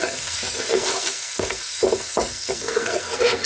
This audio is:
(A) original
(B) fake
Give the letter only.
B